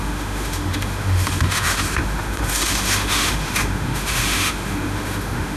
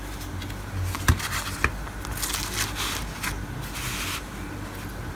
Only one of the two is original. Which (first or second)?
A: second